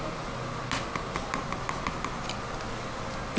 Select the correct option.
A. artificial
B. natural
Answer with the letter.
B